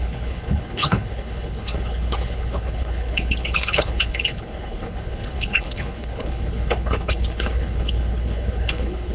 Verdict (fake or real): fake